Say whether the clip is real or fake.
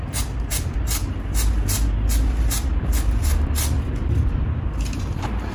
real